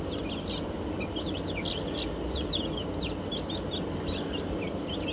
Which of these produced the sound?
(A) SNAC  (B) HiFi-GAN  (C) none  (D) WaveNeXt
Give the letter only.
C